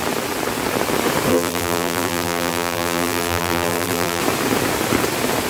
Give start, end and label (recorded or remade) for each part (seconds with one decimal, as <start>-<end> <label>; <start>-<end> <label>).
0.0-1.3 recorded; 1.3-4.2 remade; 4.2-5.5 recorded